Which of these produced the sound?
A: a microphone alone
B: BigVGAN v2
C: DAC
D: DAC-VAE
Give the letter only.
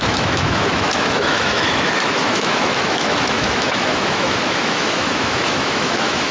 D